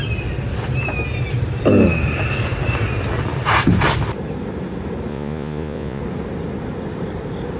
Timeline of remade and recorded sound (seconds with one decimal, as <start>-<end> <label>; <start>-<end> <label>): 0.0-5.1 recorded; 5.1-6.0 remade; 6.0-7.6 recorded